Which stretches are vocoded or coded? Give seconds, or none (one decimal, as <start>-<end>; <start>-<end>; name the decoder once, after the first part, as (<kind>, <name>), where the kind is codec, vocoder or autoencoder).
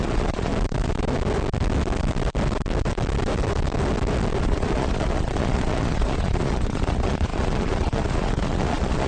0.0-0.5 (vocoder, Vocos); 4.4-9.1